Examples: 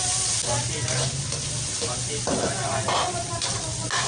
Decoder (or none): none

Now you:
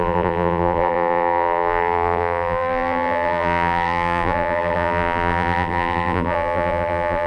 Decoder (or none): vocoder, BigVGAN v2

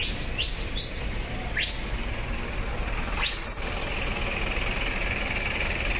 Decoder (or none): none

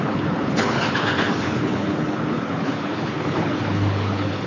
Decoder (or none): codec, HILCodec